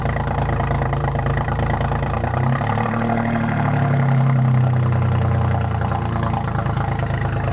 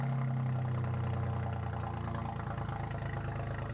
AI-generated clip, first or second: first